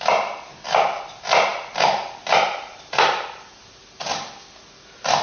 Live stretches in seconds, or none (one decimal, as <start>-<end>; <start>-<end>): 0.0-5.2

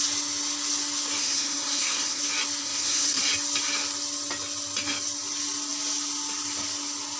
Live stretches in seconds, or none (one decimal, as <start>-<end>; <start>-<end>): 0.0-1.2; 2.2-2.6; 3.2-7.2

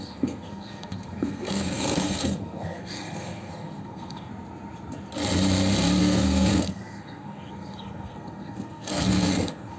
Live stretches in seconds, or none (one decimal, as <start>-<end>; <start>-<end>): 4.3-6.0

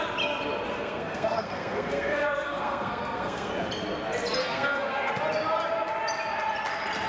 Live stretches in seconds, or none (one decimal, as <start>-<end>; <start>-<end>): 0.0-0.7; 3.5-4.4; 5.1-7.1

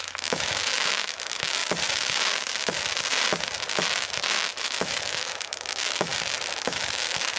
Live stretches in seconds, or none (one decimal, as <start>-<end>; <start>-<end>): 1.6-3.7; 6.1-6.7

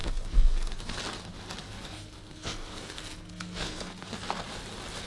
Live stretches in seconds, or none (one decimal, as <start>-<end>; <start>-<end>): 1.0-1.6; 4.4-5.1

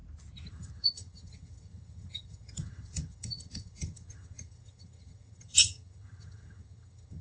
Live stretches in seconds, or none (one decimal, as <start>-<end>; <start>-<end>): 0.0-0.5

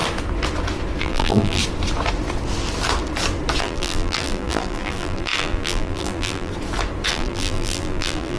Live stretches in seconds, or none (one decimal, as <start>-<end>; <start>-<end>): 0.0-1.0; 1.6-3.6; 6.5-7.1